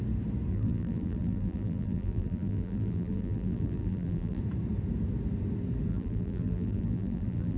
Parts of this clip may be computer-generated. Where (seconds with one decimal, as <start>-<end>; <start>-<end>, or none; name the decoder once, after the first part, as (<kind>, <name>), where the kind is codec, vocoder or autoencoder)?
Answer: 0.5-4.4 (vocoder, BigVGAN v2); 5.9-7.6